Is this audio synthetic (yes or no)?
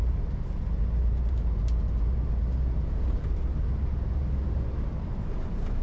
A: yes